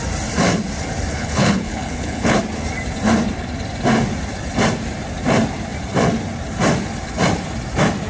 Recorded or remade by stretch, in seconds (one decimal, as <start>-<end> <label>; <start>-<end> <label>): 0.0-1.1 recorded; 1.1-2.4 remade; 2.4-8.1 recorded